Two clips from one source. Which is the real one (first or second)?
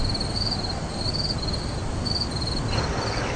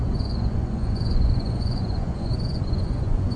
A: first